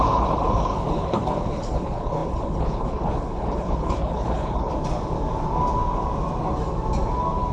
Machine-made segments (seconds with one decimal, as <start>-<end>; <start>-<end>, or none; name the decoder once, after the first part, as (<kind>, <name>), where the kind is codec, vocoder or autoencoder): 0.0-4.7 (codec, HILCodec)

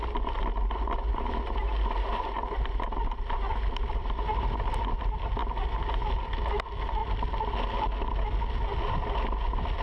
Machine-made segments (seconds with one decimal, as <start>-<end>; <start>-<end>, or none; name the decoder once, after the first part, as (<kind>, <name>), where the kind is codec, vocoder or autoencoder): none

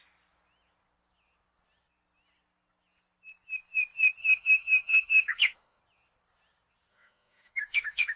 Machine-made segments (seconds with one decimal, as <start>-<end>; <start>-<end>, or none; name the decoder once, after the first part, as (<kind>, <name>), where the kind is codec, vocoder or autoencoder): 4.2-5.8 (autoencoder, DAC-VAE); 6.9-8.2

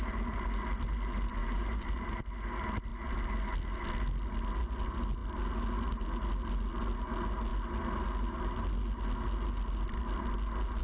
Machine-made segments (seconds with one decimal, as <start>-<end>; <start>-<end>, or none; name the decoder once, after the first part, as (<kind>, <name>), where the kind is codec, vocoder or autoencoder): 1.4-2.2 (vocoder, BigVGAN v2)

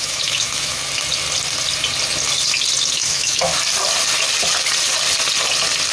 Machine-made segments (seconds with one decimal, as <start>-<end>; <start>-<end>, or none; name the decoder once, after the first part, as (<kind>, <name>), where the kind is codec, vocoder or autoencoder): 0.0-0.8 (autoencoder, DAC-VAE); 2.9-3.5